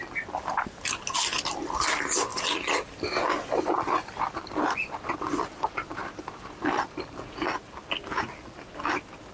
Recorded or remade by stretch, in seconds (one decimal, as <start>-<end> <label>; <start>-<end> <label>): 0.0-9.3 recorded